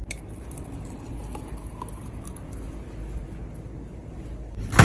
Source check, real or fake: real